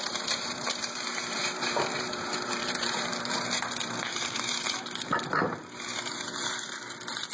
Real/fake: fake